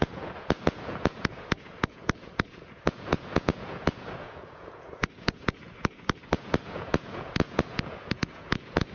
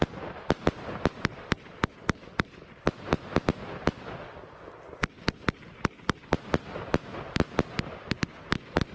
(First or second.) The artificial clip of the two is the first